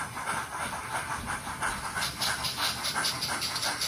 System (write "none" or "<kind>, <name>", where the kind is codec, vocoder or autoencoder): none